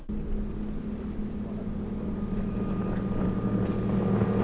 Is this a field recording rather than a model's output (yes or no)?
yes